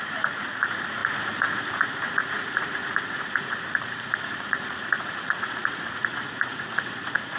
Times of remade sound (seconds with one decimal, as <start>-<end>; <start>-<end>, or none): 0.0-7.4